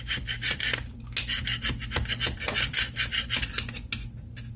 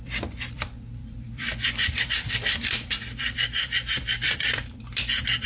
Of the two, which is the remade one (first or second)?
second